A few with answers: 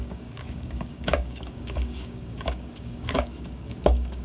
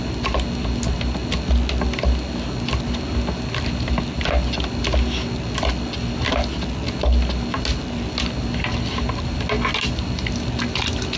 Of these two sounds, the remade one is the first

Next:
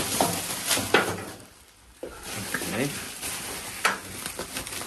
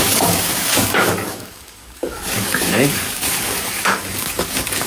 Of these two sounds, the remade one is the second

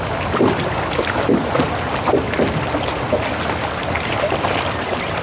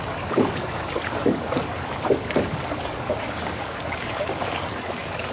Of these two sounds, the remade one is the second